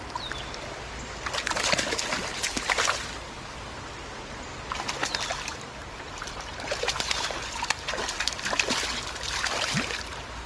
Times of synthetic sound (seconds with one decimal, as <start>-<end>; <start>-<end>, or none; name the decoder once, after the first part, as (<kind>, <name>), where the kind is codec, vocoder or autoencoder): 2.3-3.3 (vocoder, BigVGAN v2); 5.3-7.4